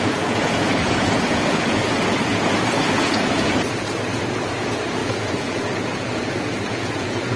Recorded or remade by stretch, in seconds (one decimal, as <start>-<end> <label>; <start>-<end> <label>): 0.0-7.4 remade